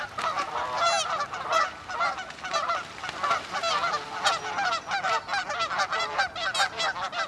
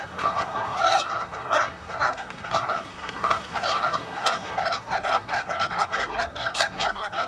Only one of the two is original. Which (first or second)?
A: first